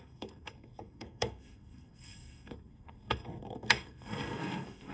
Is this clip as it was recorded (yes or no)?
no